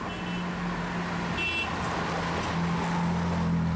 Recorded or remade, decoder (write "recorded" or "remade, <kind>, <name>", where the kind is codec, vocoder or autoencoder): recorded